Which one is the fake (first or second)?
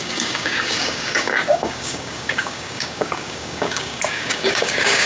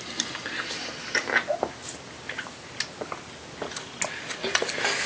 first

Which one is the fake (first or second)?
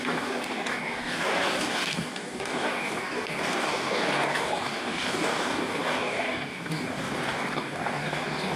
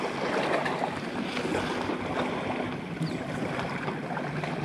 first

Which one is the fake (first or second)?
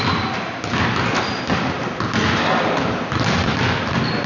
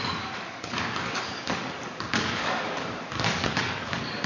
second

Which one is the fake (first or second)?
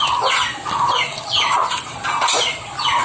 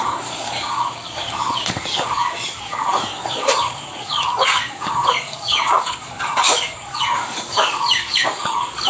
second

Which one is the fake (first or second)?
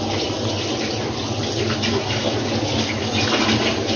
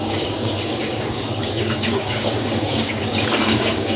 second